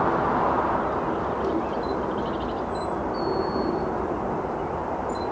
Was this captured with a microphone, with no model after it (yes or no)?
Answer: yes